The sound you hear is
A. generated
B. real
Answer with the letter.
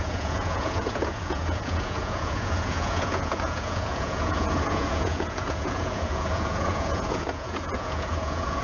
A